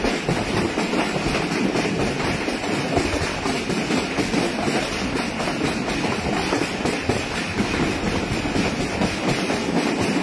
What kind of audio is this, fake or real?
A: real